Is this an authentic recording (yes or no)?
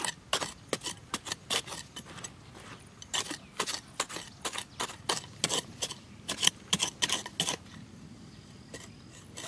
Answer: yes